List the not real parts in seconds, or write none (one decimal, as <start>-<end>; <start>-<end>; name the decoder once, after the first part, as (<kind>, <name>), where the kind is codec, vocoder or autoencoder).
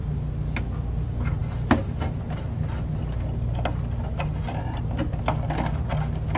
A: none